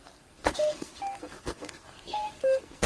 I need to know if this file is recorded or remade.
remade